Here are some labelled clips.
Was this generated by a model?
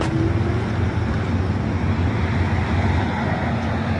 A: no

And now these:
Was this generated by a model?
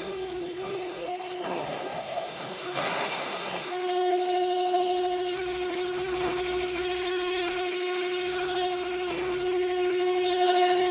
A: yes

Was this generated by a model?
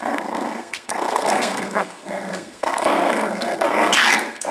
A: yes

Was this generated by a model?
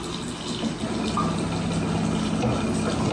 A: no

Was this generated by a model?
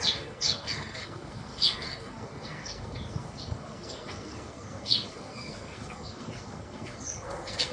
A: yes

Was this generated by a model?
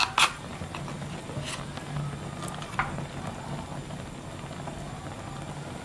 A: no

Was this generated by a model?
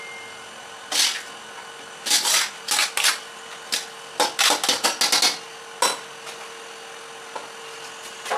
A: no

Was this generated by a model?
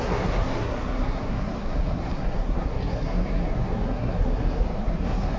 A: yes